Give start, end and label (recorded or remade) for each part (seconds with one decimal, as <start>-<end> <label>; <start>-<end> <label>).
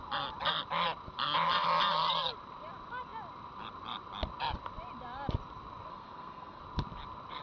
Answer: 0.0-5.9 recorded; 5.9-6.6 remade; 6.6-7.4 recorded